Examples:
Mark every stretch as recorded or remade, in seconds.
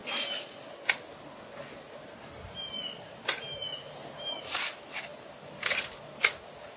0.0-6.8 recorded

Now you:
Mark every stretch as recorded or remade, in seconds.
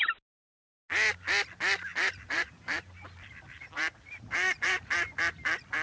0.0-1.9 recorded; 1.9-5.2 remade; 5.2-5.8 recorded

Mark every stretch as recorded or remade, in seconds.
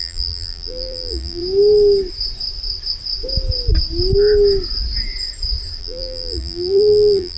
0.0-1.4 remade; 1.4-5.8 recorded; 5.8-7.4 remade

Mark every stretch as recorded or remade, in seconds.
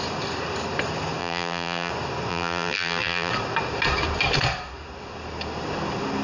0.0-1.2 recorded; 1.2-1.9 remade; 1.9-2.3 recorded; 2.3-3.3 remade; 3.3-6.2 recorded